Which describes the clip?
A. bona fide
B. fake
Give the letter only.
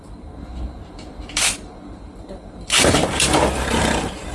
B